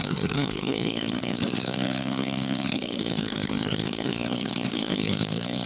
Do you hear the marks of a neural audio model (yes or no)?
yes